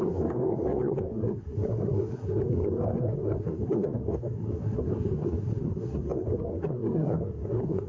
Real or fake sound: fake